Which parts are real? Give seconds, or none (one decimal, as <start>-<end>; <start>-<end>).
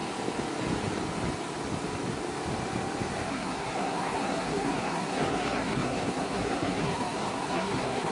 0.0-3.3